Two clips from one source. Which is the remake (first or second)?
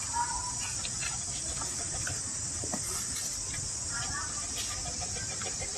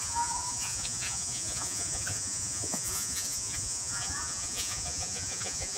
second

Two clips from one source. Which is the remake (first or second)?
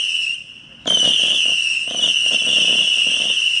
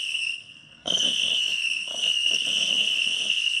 second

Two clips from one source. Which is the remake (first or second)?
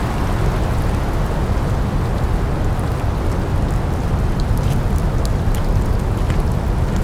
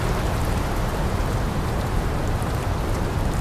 second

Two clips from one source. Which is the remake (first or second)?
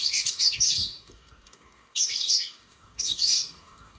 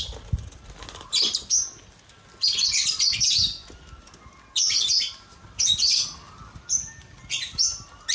first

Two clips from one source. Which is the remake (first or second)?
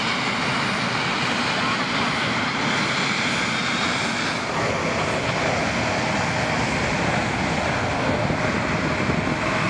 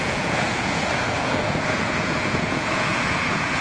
second